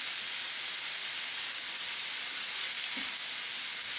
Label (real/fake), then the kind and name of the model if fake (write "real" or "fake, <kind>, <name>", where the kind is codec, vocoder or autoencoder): real